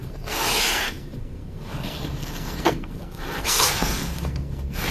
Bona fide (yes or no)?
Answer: no